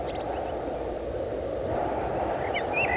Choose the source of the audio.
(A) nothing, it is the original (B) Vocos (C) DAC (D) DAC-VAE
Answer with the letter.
A